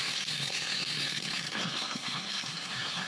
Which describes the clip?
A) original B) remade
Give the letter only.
B